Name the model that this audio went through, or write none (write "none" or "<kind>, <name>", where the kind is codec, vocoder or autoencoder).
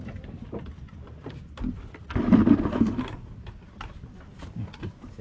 none